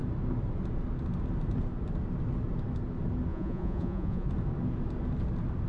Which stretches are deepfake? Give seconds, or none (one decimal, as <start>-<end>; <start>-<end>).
3.3-4.3